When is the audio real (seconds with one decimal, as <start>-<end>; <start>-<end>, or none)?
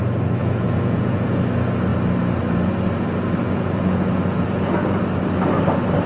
0.0-0.4; 1.4-3.4; 5.0-6.1